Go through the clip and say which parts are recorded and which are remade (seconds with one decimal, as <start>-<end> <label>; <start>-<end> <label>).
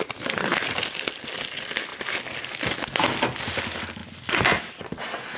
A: 0.0-5.4 recorded